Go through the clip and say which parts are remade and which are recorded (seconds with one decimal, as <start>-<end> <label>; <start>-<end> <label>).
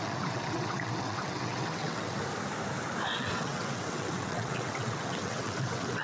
0.0-2.2 remade; 2.2-3.1 recorded; 3.1-6.0 remade